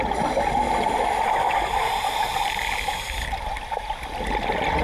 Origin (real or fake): real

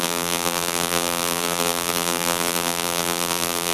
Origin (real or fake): fake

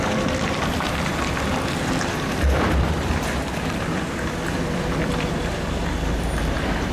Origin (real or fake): fake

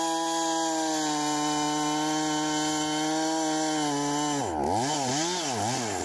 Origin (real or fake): real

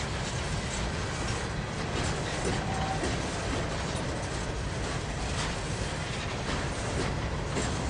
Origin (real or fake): real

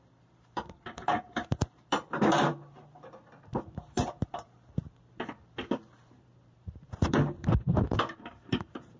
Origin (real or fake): fake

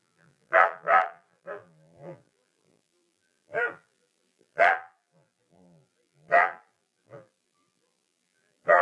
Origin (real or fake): fake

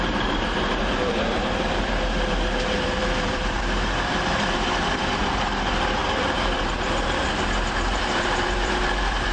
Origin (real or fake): fake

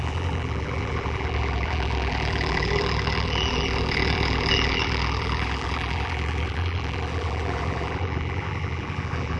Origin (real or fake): fake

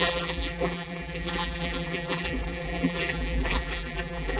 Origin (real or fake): fake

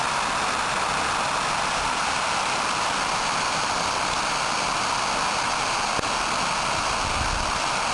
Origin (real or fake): real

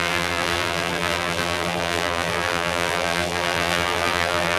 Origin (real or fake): fake